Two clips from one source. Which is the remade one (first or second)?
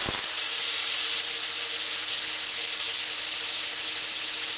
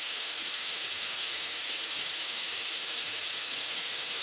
second